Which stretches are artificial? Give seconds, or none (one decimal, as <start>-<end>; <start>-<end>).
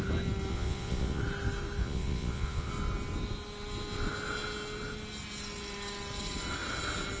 0.5-1.2; 1.8-2.7